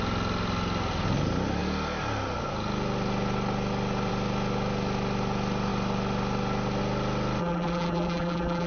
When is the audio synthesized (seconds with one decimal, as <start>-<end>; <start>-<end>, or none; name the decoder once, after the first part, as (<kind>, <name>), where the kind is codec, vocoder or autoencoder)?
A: 7.4-8.7 (vocoder, BigVGAN v2)